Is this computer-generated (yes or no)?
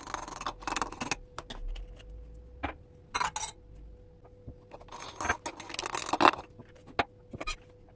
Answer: no